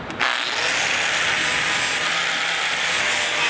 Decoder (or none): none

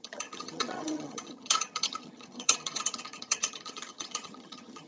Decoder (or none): vocoder, HiFi-GAN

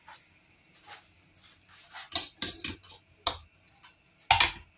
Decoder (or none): none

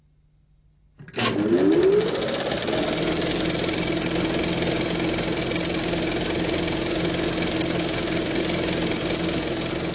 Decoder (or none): none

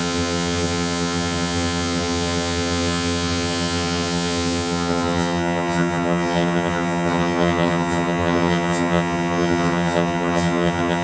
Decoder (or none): vocoder, HiFi-GAN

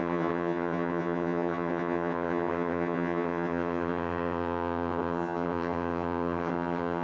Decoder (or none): vocoder, HiFi-GAN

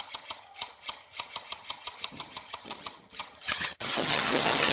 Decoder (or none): vocoder, HiFi-GAN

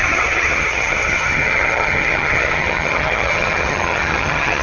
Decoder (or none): vocoder, HiFi-GAN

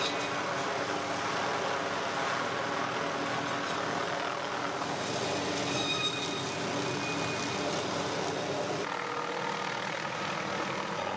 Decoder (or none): none